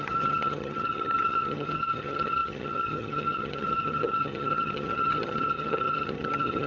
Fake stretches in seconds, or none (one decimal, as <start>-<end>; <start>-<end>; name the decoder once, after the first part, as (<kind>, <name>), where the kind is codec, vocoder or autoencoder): 0.0-6.7 (vocoder, HiFi-GAN)